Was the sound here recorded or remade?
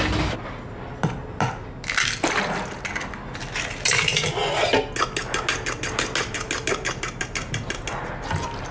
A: recorded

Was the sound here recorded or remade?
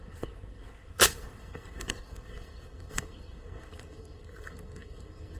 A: remade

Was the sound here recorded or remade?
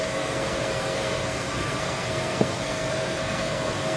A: remade